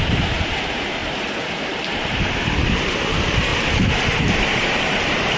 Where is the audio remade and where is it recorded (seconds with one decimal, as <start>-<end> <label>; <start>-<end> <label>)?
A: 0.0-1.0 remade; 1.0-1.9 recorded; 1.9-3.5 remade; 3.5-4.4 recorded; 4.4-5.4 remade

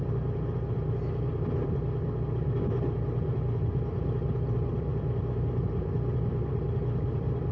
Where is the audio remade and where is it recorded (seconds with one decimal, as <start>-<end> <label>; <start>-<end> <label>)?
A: 0.0-4.9 remade; 4.9-5.7 recorded; 5.7-7.5 remade

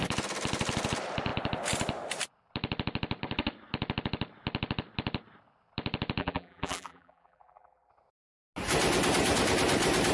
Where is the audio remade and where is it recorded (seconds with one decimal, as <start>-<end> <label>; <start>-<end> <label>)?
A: 0.0-6.2 recorded; 6.2-7.9 remade; 7.9-10.1 recorded

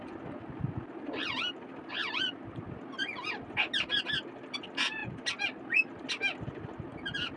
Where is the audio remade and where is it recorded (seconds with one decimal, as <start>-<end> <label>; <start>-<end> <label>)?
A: 0.0-7.4 recorded

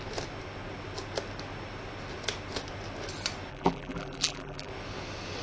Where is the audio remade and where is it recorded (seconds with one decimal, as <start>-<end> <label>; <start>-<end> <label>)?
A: 0.0-3.5 recorded; 3.5-4.7 remade; 4.7-5.4 recorded